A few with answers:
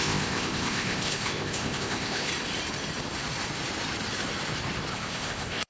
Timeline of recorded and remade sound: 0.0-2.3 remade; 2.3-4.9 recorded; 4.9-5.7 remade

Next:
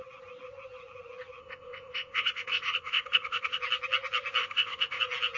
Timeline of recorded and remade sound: 0.0-1.4 recorded; 1.4-3.6 remade; 3.6-4.4 recorded; 4.4-5.0 remade; 5.0-5.4 recorded

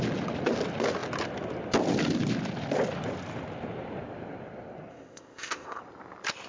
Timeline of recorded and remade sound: 0.0-4.9 recorded; 4.9-5.8 remade; 5.8-6.5 recorded

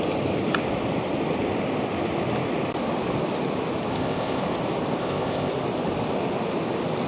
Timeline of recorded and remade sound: 0.0-3.9 recorded; 3.9-4.4 remade; 4.4-5.0 recorded; 5.0-5.5 remade; 5.5-7.1 recorded

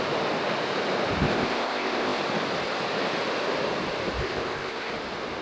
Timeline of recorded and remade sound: 0.0-1.2 recorded; 1.2-2.2 remade; 2.2-4.2 recorded; 4.2-4.9 remade; 4.9-5.4 recorded

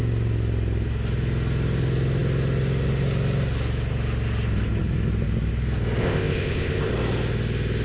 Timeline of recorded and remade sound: 0.0-6.0 recorded; 6.0-6.9 remade; 6.9-7.8 recorded